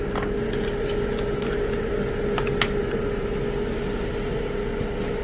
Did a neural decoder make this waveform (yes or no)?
no